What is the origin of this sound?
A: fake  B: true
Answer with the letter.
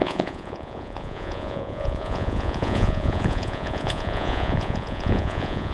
A